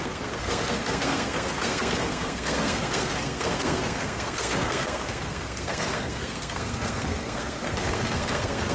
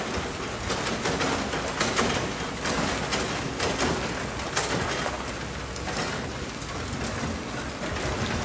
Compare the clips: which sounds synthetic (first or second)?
first